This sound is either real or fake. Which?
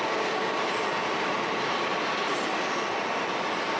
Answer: real